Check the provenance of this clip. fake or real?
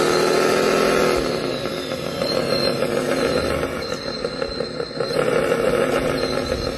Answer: real